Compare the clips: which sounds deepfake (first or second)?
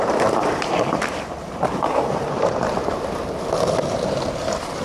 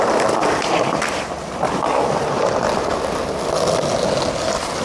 first